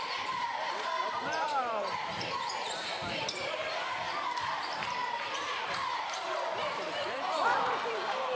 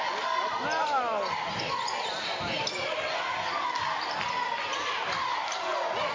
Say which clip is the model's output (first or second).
first